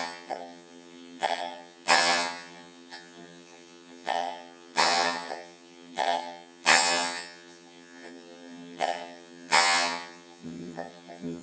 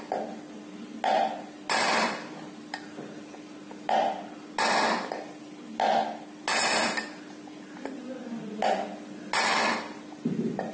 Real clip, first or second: second